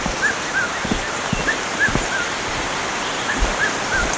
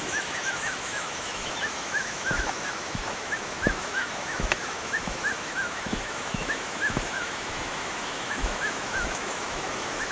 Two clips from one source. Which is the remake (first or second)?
second